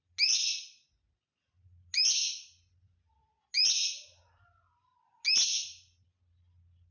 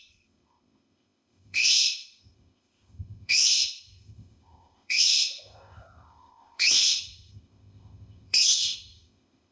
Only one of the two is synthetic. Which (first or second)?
second